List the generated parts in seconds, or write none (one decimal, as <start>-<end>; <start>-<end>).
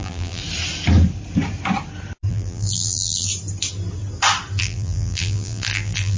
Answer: 0.0-0.4; 2.3-3.3; 4.6-6.2